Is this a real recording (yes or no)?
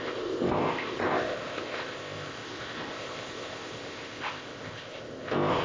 no